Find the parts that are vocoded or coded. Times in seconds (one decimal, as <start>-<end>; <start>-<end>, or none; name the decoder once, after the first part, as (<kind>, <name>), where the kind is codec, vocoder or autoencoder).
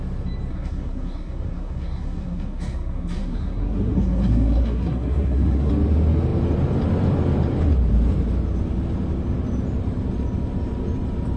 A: 0.5-5.7 (codec, SNAC)